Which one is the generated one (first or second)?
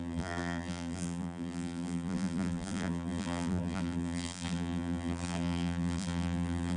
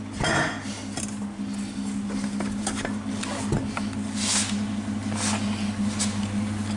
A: first